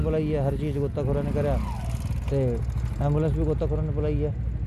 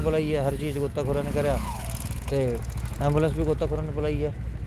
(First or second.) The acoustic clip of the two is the first